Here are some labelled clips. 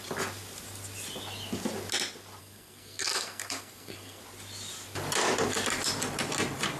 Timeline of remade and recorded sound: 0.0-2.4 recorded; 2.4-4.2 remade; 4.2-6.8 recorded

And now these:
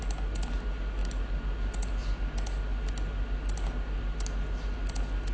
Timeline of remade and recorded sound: 0.0-5.3 recorded

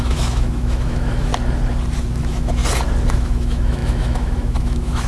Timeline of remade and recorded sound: 0.0-1.3 remade; 1.3-2.2 recorded; 2.2-2.6 remade; 2.6-3.1 recorded; 3.1-5.1 remade

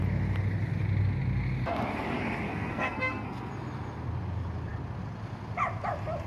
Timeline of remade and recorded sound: 0.0-2.5 recorded; 2.5-3.5 remade; 3.5-6.3 recorded

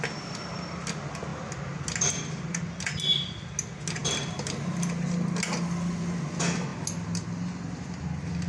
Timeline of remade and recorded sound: 0.0-8.5 recorded

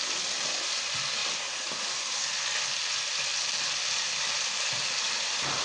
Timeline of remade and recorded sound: 0.0-5.6 recorded